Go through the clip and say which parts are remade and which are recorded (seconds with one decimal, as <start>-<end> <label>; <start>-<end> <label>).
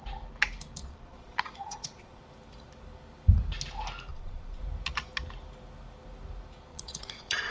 0.0-0.8 recorded; 0.8-2.2 remade; 2.2-4.1 recorded; 4.1-4.6 remade; 4.6-6.7 recorded; 6.7-7.5 remade